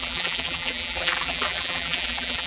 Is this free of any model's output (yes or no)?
no